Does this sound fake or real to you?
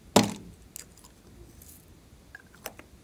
real